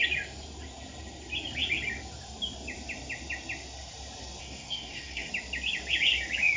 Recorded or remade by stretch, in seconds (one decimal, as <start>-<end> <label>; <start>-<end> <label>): 0.0-4.4 recorded; 4.4-5.3 remade; 5.3-6.6 recorded